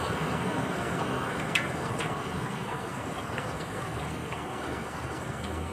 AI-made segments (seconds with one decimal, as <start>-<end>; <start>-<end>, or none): 0.0-5.7